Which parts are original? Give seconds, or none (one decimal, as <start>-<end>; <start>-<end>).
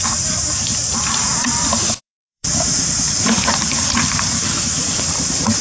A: 2.7-3.3